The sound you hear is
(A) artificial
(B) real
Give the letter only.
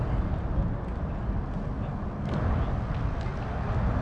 B